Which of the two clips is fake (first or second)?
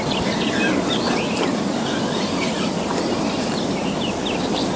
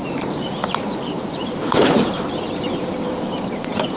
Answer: second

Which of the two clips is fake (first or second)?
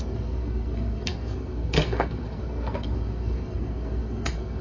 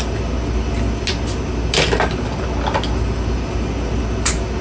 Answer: first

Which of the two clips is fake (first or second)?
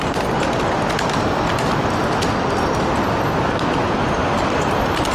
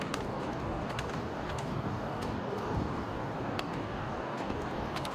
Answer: second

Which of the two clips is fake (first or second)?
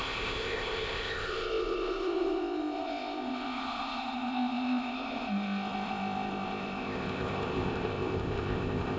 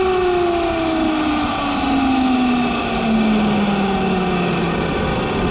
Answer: first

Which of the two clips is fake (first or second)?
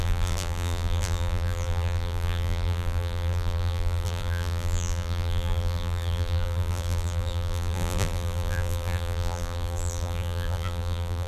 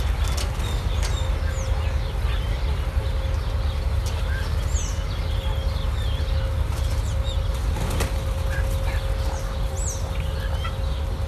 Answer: first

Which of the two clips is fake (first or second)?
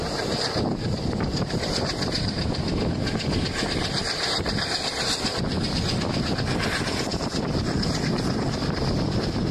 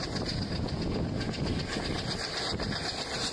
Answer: first